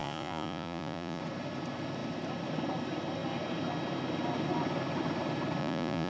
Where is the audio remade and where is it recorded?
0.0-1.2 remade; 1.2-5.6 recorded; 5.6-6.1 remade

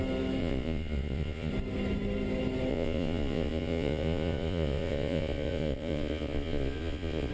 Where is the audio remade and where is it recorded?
0.0-0.4 recorded; 0.4-1.5 remade; 1.5-2.7 recorded; 2.7-7.3 remade

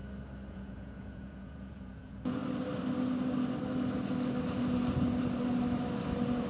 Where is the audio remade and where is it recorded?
0.0-0.5 recorded; 0.5-2.4 remade; 2.4-6.5 recorded

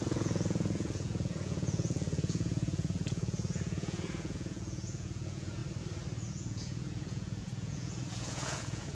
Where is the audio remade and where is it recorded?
0.0-5.6 remade; 5.6-6.3 recorded; 6.3-8.9 remade

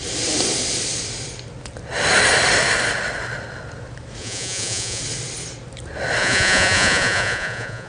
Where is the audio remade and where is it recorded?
0.0-4.2 recorded; 4.2-5.0 remade; 5.0-6.2 recorded; 6.2-7.9 remade

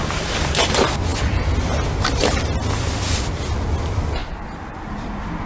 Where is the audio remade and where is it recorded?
0.0-5.5 recorded

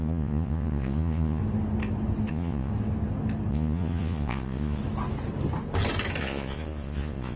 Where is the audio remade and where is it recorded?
0.0-1.4 remade; 1.4-2.3 recorded; 2.3-2.7 remade; 2.7-3.5 recorded; 3.5-4.8 remade; 4.8-6.2 recorded; 6.2-7.4 remade